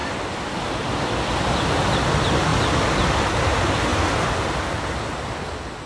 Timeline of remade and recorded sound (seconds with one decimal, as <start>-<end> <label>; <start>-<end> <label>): 0.0-0.6 remade; 0.6-5.9 recorded